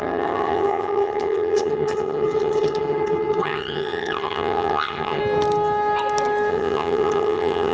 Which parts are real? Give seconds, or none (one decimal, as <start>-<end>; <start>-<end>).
5.2-6.5